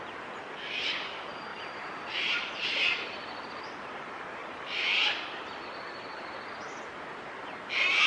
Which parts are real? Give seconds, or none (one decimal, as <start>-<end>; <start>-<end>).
0.0-1.5; 2.3-4.4; 5.1-8.1